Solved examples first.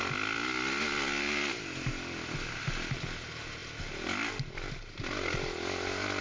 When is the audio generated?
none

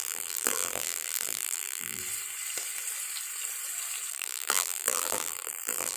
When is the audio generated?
0.0-2.0; 4.1-6.0

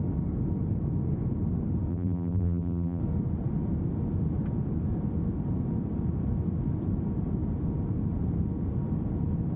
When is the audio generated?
1.9-3.0

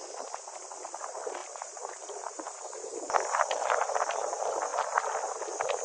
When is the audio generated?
1.4-4.0

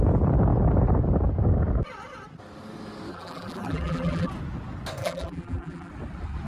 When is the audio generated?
3.1-4.3; 5.0-5.9

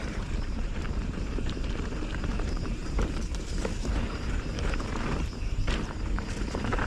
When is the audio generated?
0.0-6.9